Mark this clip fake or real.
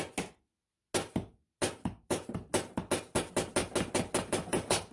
real